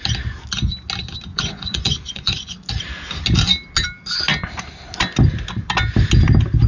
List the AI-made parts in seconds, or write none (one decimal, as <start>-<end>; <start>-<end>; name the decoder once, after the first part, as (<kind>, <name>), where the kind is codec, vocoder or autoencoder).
1.3-2.7 (vocoder, Vocos)